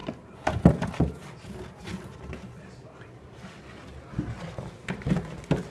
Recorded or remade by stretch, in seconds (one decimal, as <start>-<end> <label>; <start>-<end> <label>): 0.0-5.7 recorded